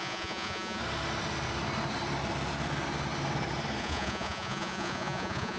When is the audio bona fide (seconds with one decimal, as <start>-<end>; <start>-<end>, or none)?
0.8-3.8